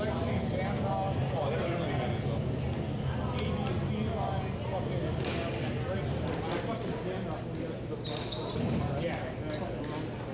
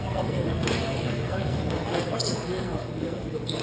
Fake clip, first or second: second